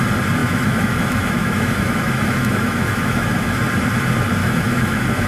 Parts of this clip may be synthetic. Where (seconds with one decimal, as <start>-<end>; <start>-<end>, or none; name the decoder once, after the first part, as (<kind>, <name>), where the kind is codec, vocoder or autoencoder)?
0.4-3.6 (autoencoder, DAC-VAE); 4.4-5.3